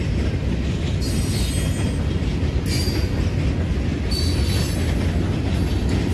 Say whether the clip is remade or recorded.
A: recorded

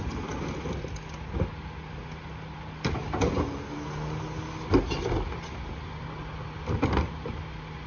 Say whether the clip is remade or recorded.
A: recorded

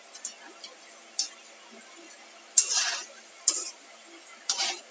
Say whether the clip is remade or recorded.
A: recorded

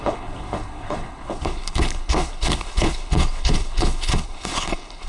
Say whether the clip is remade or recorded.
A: remade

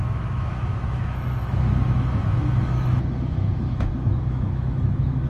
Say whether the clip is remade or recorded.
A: remade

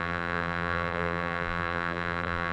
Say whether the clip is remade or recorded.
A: remade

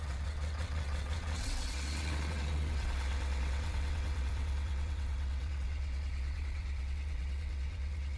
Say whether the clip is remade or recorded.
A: remade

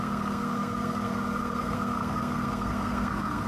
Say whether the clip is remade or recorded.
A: remade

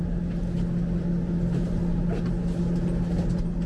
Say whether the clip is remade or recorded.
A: recorded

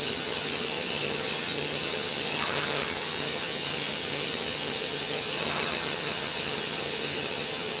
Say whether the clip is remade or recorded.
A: remade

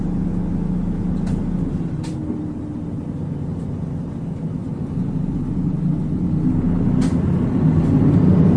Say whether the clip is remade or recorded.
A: recorded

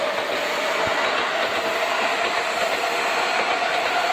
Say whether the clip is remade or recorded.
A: recorded